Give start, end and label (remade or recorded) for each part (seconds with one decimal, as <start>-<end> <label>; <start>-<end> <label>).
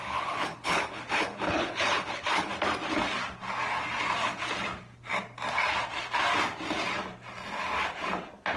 0.0-2.5 remade; 2.5-8.6 recorded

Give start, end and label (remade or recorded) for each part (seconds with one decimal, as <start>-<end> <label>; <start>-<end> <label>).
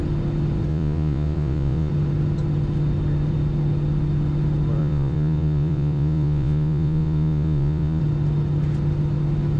0.0-0.7 recorded; 0.7-1.9 remade; 1.9-4.8 recorded; 4.8-8.0 remade; 8.0-9.6 recorded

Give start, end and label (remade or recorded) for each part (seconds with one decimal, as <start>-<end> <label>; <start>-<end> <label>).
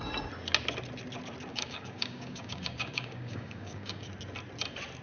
0.0-1.5 recorded; 1.5-4.1 remade; 4.1-5.0 recorded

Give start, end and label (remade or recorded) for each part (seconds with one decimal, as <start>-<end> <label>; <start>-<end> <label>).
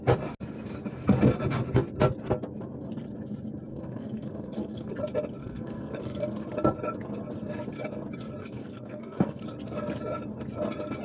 0.0-3.7 recorded; 3.7-4.9 remade; 4.9-5.4 recorded; 5.4-6.2 remade; 6.2-8.4 recorded; 8.4-9.4 remade; 9.4-11.0 recorded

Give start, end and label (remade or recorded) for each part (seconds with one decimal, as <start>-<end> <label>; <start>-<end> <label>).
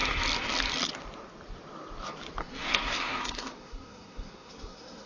0.0-2.4 recorded; 2.4-5.1 remade